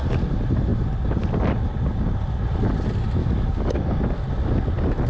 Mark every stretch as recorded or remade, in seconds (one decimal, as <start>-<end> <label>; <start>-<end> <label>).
0.0-3.2 recorded; 3.2-4.0 remade; 4.0-5.1 recorded